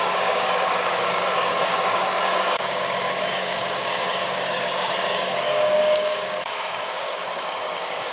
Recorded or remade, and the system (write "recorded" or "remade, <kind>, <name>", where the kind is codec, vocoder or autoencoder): remade, codec, DAC